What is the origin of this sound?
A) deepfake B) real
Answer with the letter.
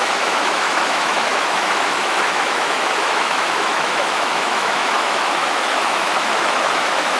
A